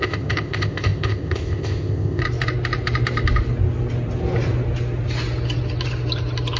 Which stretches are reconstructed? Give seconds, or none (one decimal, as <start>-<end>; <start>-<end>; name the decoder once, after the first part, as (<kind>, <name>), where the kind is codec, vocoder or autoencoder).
0.0-2.2 (codec, ZipCodec)